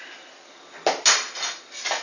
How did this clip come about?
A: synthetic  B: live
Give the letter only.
B